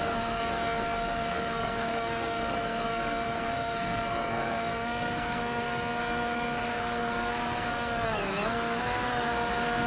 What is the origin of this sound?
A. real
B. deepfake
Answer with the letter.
B